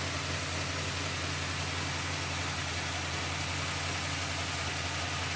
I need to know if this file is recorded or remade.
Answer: recorded